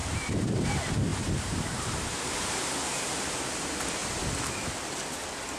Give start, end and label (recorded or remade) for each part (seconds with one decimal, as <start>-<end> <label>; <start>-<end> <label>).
0.0-0.7 remade; 0.7-1.1 recorded; 1.1-2.5 remade; 2.5-5.6 recorded